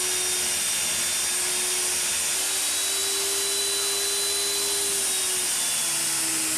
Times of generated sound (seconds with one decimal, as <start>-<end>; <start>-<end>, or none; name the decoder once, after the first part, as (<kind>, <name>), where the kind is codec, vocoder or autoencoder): none

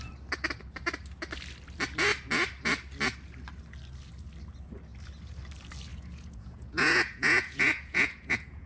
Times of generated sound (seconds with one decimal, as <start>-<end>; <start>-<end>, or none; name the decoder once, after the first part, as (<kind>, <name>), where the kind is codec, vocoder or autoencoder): 5.9-8.7 (vocoder, Vocos)

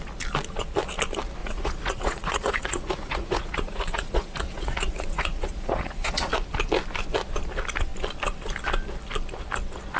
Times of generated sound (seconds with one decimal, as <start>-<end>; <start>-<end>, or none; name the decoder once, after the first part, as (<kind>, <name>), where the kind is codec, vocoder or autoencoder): 1.4-6.3 (vocoder, Vocos)

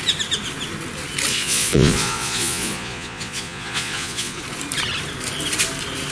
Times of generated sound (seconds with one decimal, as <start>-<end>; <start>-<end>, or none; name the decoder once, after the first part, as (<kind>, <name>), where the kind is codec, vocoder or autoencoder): 1.3-4.4 (vocoder, Vocos)

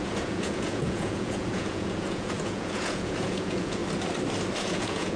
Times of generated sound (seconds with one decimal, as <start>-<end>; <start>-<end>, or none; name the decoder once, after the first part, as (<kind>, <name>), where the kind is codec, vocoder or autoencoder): 0.0-3.8 (vocoder, Vocos); 4.6-5.2

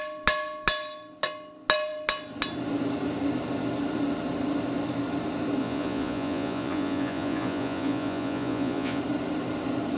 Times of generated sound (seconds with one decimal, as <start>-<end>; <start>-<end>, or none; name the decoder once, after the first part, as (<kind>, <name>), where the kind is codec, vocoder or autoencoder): 5.6-9.0 (vocoder, Vocos)

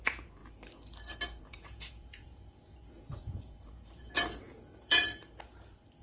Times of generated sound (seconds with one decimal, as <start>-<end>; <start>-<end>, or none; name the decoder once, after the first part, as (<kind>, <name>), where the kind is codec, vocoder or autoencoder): 0.0-0.4 (vocoder, Vocos); 1.4-5.0

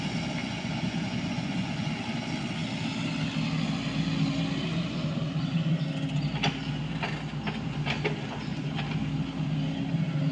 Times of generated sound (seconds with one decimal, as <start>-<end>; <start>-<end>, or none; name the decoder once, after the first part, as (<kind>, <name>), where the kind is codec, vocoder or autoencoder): 0.4-1.9 (vocoder, Vocos)